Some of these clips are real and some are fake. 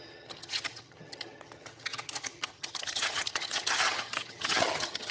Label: fake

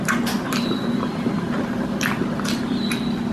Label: real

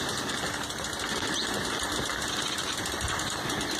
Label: real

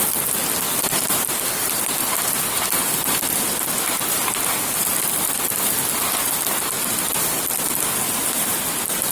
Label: real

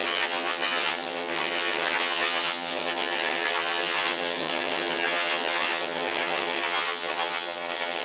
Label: fake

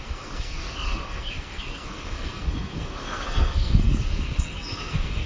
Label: fake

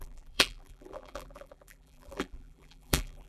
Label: fake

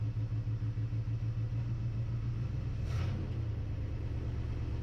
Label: real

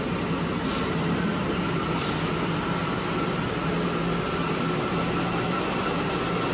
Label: real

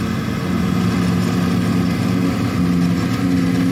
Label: real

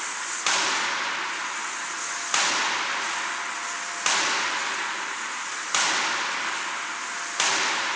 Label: real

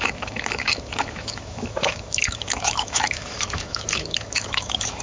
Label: fake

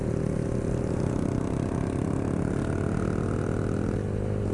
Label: real